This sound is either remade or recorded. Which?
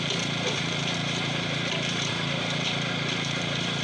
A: remade